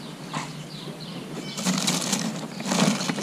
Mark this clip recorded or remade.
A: recorded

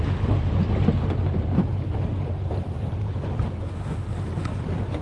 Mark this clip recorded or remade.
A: recorded